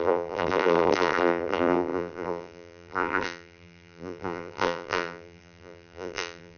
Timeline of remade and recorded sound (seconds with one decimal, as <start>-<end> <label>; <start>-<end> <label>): 0.0-6.6 remade